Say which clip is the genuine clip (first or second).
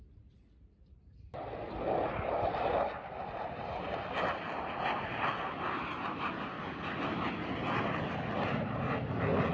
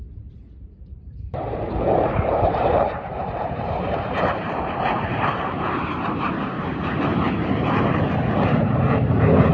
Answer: first